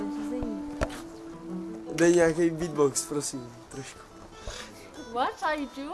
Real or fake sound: real